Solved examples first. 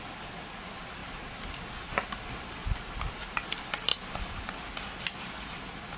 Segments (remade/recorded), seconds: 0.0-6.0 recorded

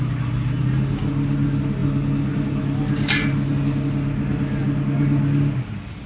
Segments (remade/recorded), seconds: 0.0-6.1 recorded